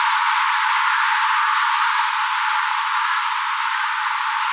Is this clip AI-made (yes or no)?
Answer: no